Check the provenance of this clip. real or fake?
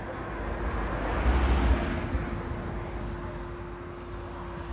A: real